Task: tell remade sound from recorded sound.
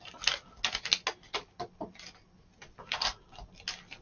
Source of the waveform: recorded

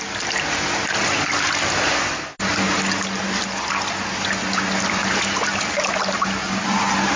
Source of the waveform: recorded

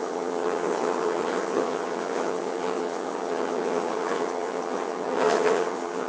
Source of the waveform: remade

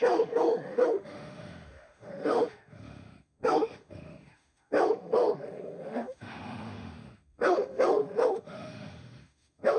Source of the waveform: remade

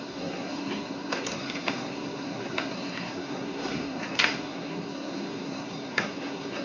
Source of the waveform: remade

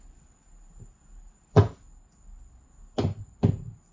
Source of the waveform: recorded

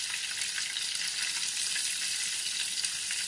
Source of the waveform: recorded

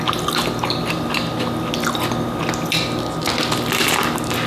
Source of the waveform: recorded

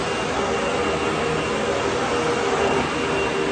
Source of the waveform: recorded